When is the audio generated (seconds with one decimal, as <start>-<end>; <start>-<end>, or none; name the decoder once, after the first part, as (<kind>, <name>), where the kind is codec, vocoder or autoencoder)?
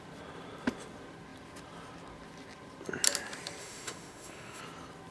3.6-4.6 (autoencoder, DAC-VAE)